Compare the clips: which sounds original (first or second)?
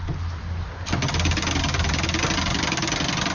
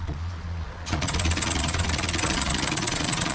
first